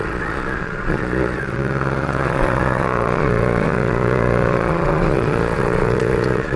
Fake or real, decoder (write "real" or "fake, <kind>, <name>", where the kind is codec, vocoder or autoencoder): fake, vocoder, Vocos